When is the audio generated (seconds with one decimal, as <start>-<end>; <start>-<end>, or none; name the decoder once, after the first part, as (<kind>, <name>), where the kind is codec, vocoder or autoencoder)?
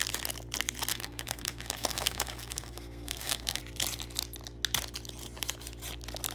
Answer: 0.9-3.6 (codec, SNAC)